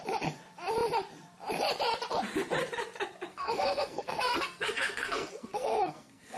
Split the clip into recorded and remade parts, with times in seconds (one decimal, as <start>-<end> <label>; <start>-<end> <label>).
0.0-3.3 recorded; 3.3-6.4 remade